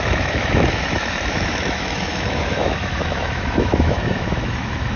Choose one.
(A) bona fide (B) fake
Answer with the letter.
B